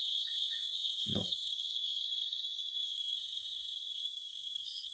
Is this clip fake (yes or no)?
yes